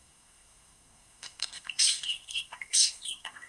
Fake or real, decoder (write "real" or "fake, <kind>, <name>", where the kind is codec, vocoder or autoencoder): fake, codec, SNAC